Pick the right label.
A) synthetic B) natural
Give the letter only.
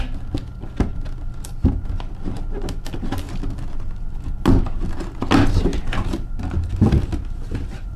B